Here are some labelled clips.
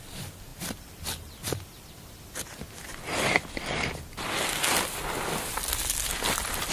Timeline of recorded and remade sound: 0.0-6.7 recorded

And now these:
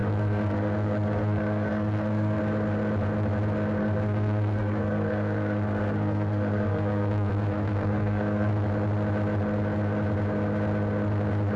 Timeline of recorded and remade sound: 0.0-2.4 remade; 2.4-3.8 recorded; 3.8-8.5 remade; 8.5-11.6 recorded

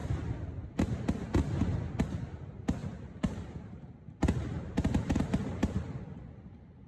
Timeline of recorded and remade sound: 0.0-2.8 recorded; 2.8-6.0 remade; 6.0-6.9 recorded